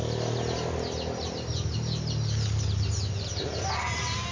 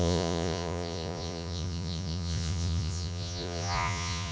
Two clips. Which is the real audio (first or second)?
first